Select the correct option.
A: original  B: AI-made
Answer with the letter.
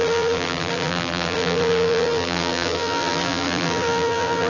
B